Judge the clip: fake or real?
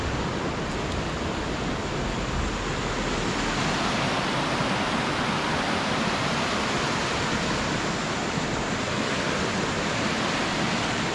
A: real